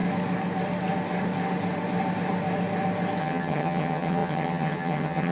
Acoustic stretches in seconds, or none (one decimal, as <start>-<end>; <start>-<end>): 0.0-3.2